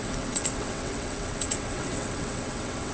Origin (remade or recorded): remade